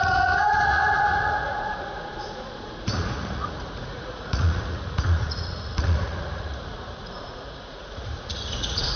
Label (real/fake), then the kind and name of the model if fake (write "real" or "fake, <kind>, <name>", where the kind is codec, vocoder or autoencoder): fake, vocoder, Vocos